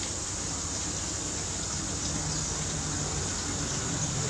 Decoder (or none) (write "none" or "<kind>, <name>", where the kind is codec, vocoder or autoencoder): none